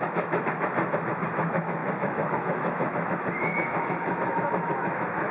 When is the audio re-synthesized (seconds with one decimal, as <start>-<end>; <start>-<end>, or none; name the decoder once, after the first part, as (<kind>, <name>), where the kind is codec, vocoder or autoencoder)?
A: 0.0-5.3 (autoencoder, DAC-VAE)